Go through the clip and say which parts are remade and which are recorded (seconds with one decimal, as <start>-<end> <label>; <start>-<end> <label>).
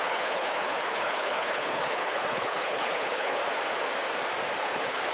0.0-3.4 remade; 3.4-4.6 recorded; 4.6-5.1 remade